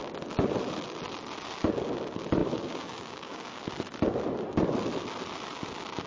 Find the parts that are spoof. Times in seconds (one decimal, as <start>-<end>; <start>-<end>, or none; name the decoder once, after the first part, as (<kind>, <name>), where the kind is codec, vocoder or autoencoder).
2.4-3.6 (codec, DAC)